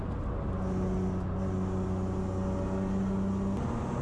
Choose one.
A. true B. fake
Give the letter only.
A